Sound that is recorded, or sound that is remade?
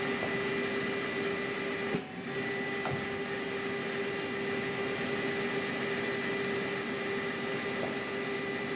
recorded